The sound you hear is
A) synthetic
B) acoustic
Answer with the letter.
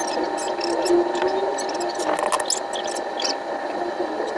B